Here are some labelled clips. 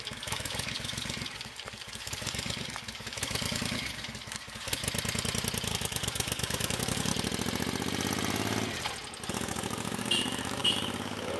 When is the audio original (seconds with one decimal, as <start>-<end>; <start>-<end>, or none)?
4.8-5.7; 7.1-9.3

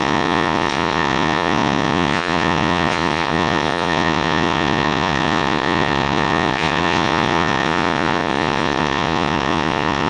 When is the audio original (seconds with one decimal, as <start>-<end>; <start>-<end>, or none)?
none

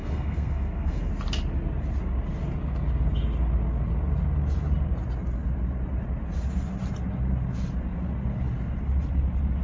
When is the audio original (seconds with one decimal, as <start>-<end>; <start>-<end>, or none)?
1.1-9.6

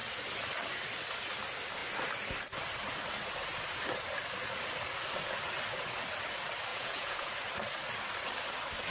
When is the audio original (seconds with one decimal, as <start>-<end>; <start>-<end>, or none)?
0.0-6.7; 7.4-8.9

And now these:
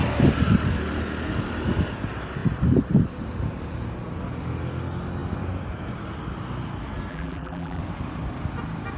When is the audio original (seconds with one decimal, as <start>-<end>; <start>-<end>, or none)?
0.0-7.1; 7.8-9.0